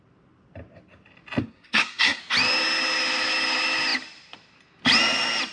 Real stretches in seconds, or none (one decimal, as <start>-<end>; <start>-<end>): 0.0-1.4; 2.2-5.5